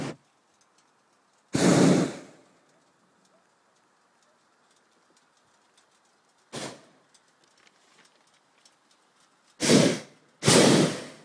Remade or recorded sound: recorded